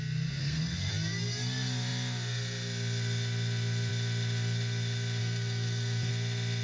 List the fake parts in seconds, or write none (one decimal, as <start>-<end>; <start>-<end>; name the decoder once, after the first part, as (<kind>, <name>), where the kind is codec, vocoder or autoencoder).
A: 0.4-0.9 (codec, SNAC); 5.2-6.1

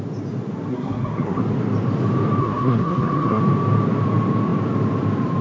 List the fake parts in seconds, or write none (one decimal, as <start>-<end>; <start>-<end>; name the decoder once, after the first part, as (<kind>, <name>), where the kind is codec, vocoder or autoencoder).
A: 0.7-1.4 (codec, SNAC); 2.4-3.4

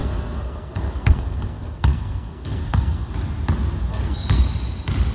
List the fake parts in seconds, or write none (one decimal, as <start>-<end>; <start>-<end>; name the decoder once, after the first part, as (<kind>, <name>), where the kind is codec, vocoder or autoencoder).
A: 0.0-3.1 (codec, SNAC); 3.9-4.4

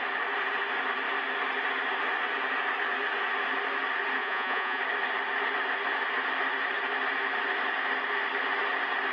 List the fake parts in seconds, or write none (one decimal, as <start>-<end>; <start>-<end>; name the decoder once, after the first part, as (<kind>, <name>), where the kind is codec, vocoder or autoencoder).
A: 4.2-4.8 (vocoder, Vocos)

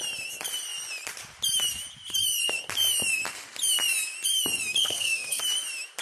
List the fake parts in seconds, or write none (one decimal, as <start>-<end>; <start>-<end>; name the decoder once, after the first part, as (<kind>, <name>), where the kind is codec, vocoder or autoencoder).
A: 4.8-5.4 (codec, SNAC)